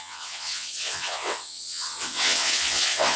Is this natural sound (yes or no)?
no